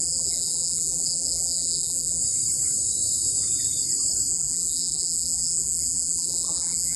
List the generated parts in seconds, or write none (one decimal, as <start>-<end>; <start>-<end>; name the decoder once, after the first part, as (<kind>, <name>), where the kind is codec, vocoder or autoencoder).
0.0-2.2 (vocoder, BigVGAN v2); 4.3-7.0